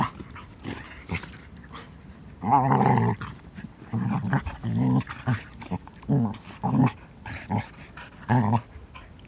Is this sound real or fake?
real